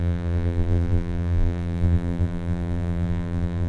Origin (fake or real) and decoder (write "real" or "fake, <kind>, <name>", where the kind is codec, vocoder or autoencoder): fake, vocoder, BigVGAN v2